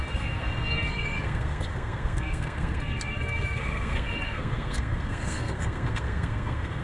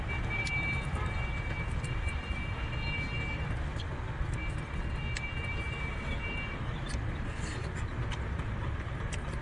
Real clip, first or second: second